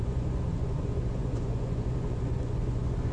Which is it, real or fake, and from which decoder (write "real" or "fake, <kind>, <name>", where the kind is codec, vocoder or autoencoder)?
fake, vocoder, Vocos